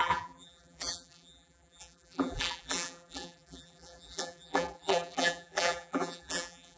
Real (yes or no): no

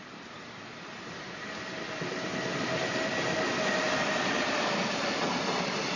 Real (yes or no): no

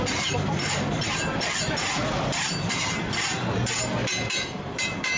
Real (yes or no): no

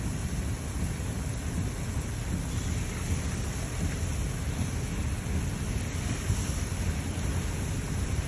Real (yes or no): yes